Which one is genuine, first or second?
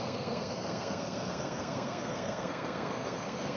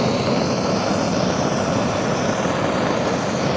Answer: second